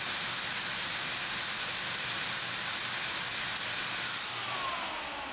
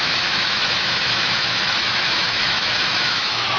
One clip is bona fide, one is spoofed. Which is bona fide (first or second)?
first